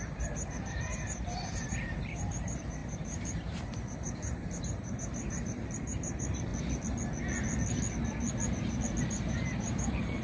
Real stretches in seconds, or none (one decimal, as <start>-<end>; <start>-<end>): 6.5-9.0